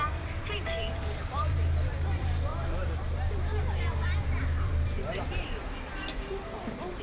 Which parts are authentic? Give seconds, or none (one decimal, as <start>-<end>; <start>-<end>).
2.5-7.0